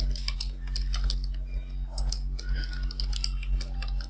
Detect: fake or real real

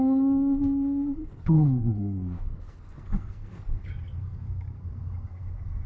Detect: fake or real fake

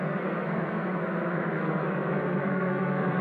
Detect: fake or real fake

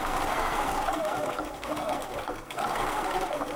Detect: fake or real fake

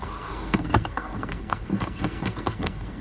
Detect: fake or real fake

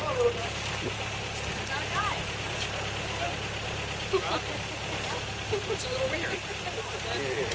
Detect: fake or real real